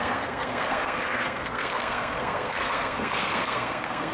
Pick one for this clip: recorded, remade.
remade